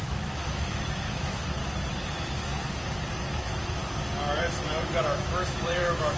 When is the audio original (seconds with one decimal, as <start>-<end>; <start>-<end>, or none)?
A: 1.6-2.1; 2.5-3.2; 3.8-4.4